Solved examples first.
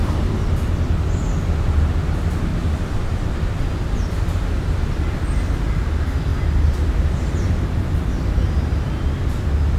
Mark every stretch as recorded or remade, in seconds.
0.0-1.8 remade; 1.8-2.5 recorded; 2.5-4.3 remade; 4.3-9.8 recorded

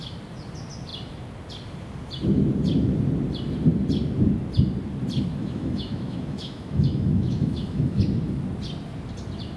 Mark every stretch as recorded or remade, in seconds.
0.0-5.4 recorded; 5.4-8.0 remade; 8.0-9.6 recorded

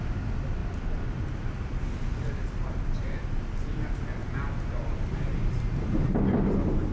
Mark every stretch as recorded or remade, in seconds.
0.0-0.6 recorded; 0.6-3.2 remade; 3.2-6.9 recorded

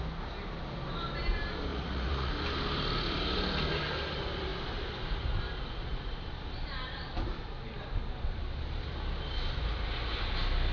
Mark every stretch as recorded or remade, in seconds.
0.0-1.7 recorded; 1.7-2.3 remade; 2.3-10.7 recorded

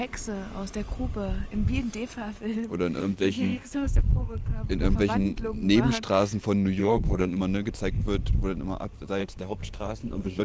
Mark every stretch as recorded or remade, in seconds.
0.0-3.0 recorded; 3.0-4.5 remade; 4.5-6.8 recorded; 6.8-7.4 remade; 7.4-9.2 recorded; 9.2-10.4 remade

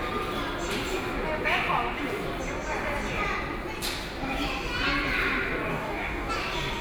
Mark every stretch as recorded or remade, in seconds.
0.0-5.7 recorded; 5.7-6.3 remade; 6.3-6.8 recorded